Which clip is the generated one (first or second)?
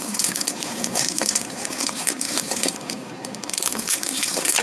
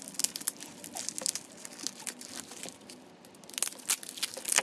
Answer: first